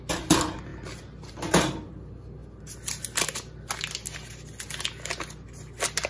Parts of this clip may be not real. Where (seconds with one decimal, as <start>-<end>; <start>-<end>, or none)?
none